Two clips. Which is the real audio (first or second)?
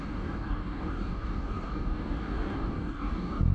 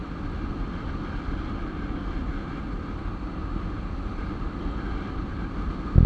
second